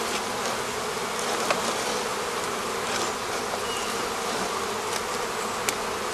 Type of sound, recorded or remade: recorded